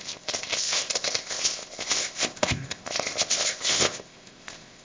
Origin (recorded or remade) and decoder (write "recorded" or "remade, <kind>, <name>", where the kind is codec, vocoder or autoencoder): remade, codec, ZipCodec